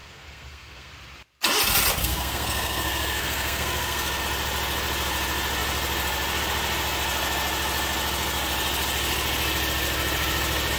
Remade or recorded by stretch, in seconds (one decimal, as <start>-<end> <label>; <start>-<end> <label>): 0.0-0.9 remade; 0.9-2.0 recorded; 2.0-4.2 remade; 4.2-10.8 recorded